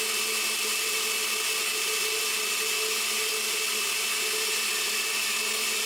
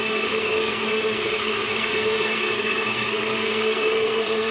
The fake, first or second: second